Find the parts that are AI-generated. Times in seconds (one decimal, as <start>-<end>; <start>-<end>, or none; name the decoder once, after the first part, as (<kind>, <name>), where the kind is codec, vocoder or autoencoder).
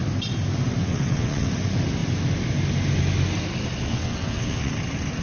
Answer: 0.8-1.5 (vocoder, WaveNeXt); 3.9-4.7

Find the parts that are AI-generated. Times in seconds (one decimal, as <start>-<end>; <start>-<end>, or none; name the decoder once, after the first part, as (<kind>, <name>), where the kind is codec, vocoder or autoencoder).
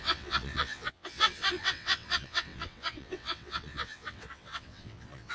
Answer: 0.0-5.3 (vocoder, WaveNeXt)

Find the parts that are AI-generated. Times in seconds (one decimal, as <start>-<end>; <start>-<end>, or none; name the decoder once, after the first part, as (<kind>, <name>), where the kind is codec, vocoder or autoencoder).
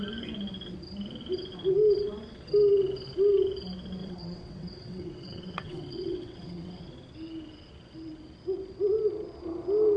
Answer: 4.0-6.8 (vocoder, WaveNeXt)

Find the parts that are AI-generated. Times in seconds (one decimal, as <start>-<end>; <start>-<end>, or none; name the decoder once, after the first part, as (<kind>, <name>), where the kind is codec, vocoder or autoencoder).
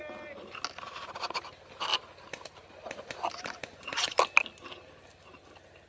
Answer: none